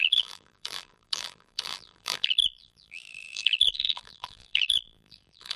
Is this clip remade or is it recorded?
remade